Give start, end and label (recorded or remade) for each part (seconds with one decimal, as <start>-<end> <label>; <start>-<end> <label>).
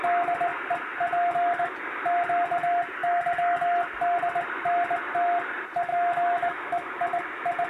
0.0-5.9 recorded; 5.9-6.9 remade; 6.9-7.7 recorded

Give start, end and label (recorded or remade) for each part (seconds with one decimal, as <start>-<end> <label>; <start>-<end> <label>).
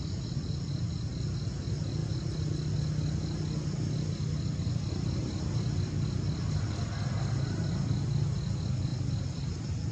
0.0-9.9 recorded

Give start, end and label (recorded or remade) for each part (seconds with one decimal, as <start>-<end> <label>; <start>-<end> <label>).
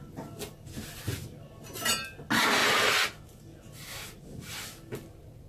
0.0-5.5 recorded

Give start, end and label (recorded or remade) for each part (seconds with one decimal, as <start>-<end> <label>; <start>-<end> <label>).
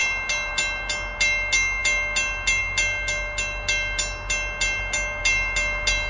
0.0-6.1 recorded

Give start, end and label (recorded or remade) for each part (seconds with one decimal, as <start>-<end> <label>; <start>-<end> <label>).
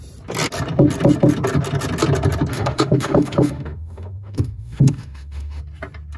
0.0-2.5 recorded; 2.5-5.6 remade; 5.6-6.2 recorded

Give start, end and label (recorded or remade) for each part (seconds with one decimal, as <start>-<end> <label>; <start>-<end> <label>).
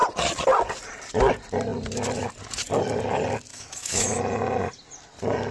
0.0-3.5 recorded; 3.5-4.2 remade; 4.2-5.5 recorded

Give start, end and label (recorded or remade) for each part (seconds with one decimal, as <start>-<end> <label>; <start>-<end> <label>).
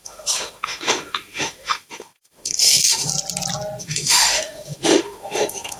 0.0-3.1 remade; 3.1-3.8 recorded; 3.8-5.8 remade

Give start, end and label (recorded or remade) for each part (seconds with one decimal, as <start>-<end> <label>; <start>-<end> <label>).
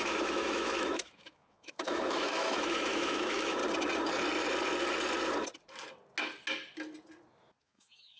0.0-3.6 remade; 3.6-7.6 recorded; 7.6-8.2 remade